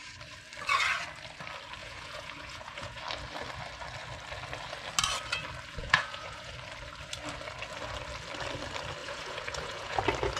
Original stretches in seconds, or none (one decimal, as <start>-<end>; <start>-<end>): 0.0-1.8; 3.0-5.8; 6.5-9.0; 10.0-10.4